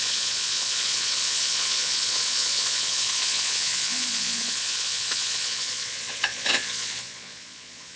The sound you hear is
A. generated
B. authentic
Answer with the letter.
A